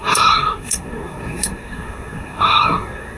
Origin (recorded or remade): remade